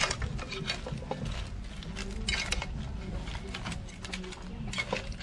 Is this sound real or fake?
real